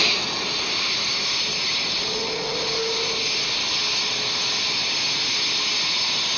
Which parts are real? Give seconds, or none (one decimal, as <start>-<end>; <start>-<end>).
0.0-6.4